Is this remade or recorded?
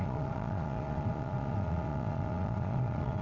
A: remade